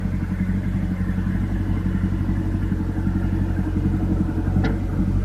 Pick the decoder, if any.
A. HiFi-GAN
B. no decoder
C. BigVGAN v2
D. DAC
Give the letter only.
B